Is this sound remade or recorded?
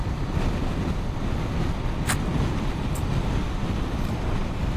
recorded